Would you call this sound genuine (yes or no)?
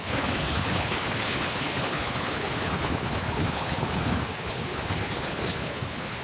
no